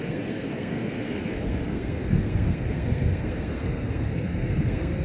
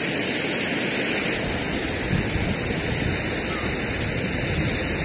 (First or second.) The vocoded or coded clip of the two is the first